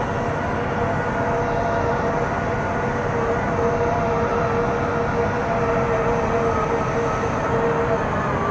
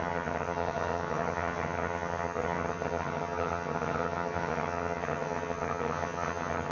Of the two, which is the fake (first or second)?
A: second